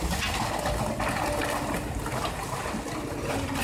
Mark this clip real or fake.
real